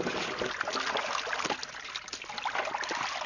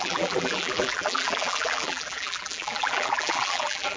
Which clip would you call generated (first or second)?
second